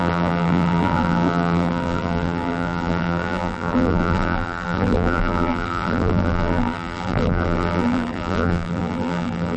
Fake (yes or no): yes